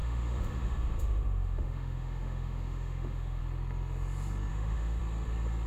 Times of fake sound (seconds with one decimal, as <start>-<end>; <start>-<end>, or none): 0.0-3.4; 4.5-5.0